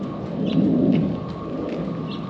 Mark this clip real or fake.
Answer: real